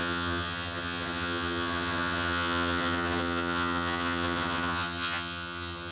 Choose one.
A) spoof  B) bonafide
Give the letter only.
A